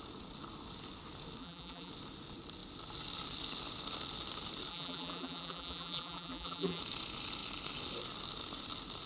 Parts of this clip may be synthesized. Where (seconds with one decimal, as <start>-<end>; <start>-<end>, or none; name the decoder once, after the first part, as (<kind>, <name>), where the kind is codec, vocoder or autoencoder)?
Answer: 1.4-1.9 (vocoder, BigVGAN v2); 4.7-6.8